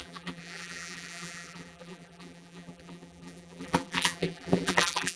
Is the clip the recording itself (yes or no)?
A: no